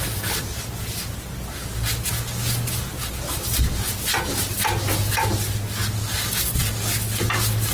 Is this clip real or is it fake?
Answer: real